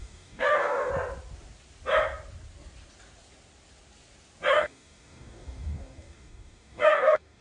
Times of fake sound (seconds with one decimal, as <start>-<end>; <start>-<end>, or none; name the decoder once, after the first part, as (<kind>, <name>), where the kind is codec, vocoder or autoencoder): 0.0-0.9 (codec, DAC); 4.5-7.4